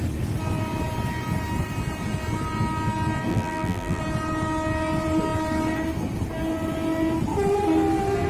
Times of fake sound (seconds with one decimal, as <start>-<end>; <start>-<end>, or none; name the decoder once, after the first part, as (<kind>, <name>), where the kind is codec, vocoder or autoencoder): 3.3-4.0 (vocoder, BigVGAN v2)